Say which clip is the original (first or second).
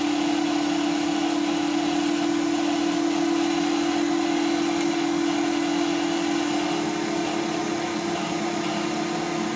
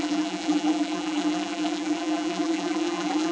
first